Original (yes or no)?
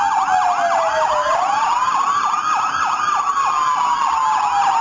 yes